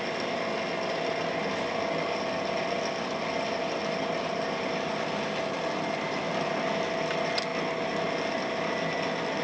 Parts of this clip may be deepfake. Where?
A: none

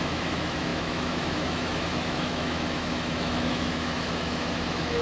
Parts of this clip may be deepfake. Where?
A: 0.0-5.0 (autoencoder, DAC-VAE)

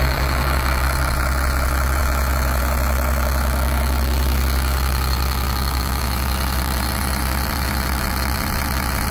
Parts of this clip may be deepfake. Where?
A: 0.0-9.1 (vocoder, BigVGAN v2)

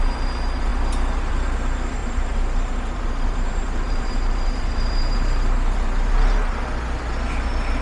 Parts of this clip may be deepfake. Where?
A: 2.0-6.1 (vocoder, BigVGAN v2)

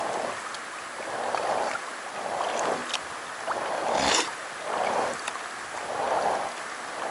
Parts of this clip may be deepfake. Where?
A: none

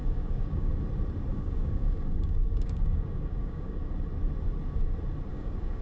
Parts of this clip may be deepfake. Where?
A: 0.0-0.7 (codec, DAC); 1.3-3.9; 5.3-5.8

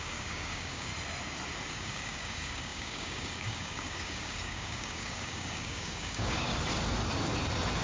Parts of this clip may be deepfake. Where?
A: 0.0-0.9 (codec, DAC); 1.7-6.5

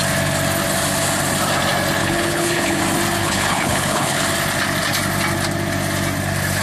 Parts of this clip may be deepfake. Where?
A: 2.0-2.8 (codec, HILCodec); 3.2-4.2